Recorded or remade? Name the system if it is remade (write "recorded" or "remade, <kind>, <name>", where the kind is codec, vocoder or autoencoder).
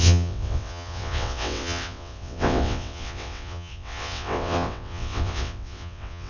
remade, vocoder, WaveNeXt